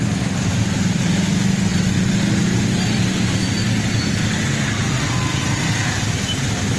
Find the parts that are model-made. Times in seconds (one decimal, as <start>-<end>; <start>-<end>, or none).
none